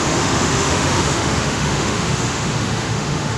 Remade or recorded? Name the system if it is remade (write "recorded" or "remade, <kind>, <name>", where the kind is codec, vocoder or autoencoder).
remade, autoencoder, DAC-VAE